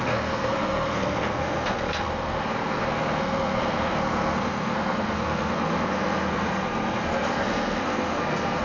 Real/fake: fake